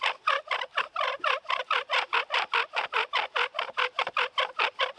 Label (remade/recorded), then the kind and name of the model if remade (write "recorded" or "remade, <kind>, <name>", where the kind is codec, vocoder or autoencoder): recorded